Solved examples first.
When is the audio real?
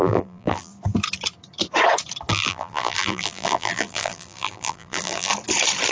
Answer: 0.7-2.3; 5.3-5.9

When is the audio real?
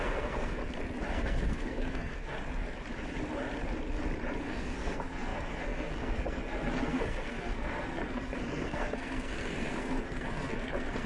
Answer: 0.6-1.1; 2.3-4.4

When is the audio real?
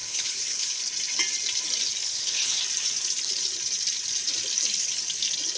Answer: 0.8-2.0; 2.6-5.6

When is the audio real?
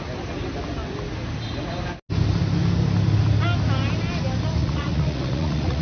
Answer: 0.0-4.6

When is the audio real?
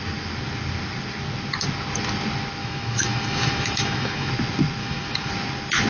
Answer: 0.0-2.6; 4.3-4.8; 5.3-5.9